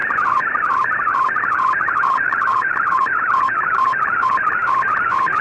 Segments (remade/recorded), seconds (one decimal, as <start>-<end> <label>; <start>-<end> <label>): 0.0-5.4 remade